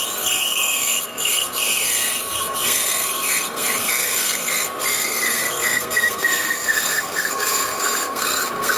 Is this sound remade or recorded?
remade